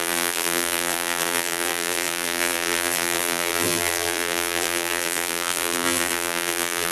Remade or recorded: remade